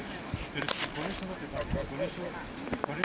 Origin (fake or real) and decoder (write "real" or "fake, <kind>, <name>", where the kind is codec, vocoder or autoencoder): real